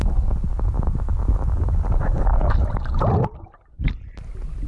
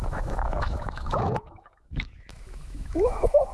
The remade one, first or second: second